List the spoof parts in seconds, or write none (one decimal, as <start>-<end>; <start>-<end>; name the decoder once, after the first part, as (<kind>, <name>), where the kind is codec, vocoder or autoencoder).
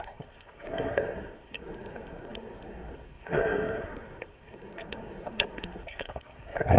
0.0-6.8 (codec, SNAC)